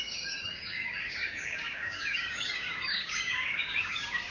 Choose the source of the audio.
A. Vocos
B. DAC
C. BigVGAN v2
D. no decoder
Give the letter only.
B